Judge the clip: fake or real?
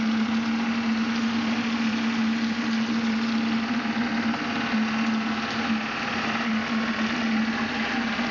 real